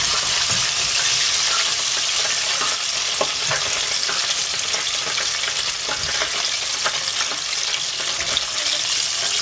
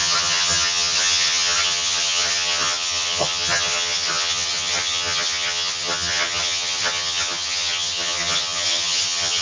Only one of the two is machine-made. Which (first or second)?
second